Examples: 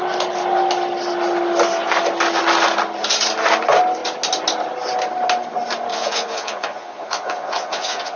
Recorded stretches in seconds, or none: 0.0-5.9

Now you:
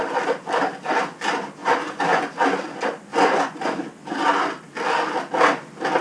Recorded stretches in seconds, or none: 0.0-1.6; 2.2-3.1; 3.7-6.0

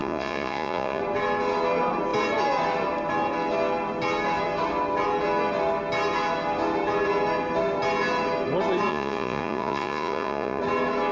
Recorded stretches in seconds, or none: 1.0-8.9; 10.6-11.1

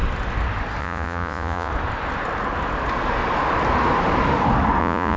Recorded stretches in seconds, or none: 0.0-0.8; 1.7-4.8

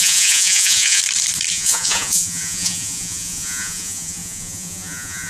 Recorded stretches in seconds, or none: 1.0-1.5

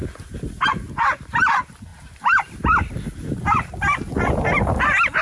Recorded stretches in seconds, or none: 0.0-5.2

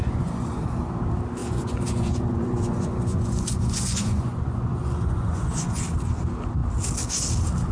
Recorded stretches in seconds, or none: 0.6-1.4; 5.8-7.7

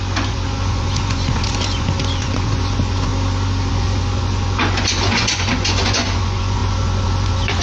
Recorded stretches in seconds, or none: 3.1-3.7